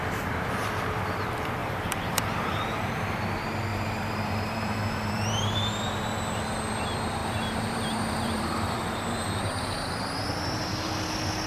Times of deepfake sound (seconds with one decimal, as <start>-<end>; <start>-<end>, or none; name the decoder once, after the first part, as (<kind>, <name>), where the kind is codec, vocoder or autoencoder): 1.6-3.2 (vocoder, BigVGAN v2); 3.7-6.4; 7.2-9.4